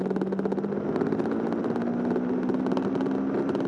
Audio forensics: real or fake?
real